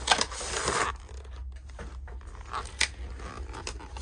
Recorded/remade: recorded